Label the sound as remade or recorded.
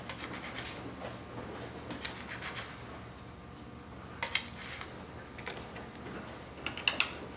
recorded